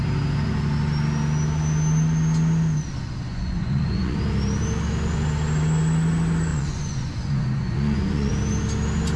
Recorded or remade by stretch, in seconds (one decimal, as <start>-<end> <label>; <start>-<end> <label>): 0.0-3.3 recorded; 3.3-4.2 remade; 4.2-6.5 recorded; 6.5-8.3 remade; 8.3-9.2 recorded